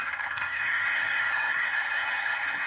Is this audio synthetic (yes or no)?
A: yes